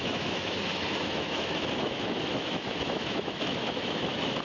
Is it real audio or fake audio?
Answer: fake